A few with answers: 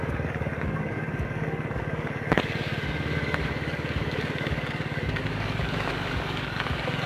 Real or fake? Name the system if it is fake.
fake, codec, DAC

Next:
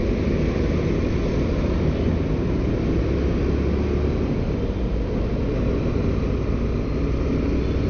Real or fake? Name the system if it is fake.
real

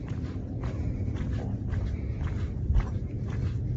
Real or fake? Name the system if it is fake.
real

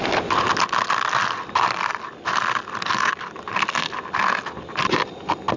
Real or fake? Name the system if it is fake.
real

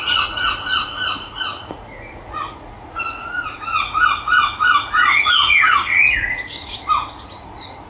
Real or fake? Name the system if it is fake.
fake, vocoder, Vocos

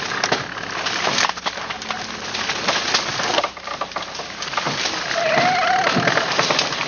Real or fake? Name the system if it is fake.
real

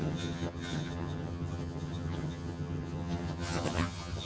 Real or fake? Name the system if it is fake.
fake, vocoder, HiFi-GAN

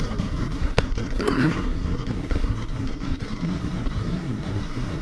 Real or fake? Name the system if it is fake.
fake, codec, SNAC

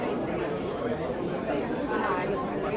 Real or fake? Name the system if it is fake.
fake, vocoder, BigVGAN v2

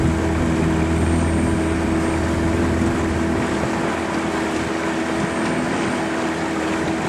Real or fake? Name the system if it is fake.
real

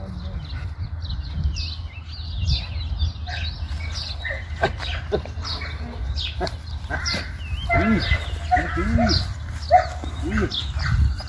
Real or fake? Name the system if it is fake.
real